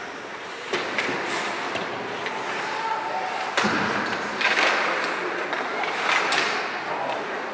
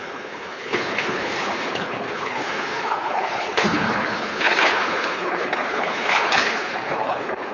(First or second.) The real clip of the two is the first